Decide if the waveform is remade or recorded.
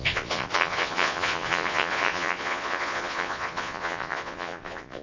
remade